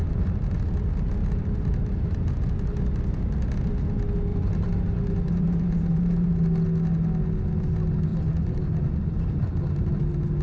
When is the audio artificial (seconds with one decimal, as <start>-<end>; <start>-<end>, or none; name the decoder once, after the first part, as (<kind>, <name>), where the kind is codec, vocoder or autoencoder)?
1.2-2.4 (vocoder, BigVGAN v2); 4.3-6.4; 8.1-10.0